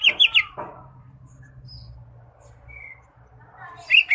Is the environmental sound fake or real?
real